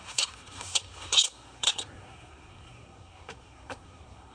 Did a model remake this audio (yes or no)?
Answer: yes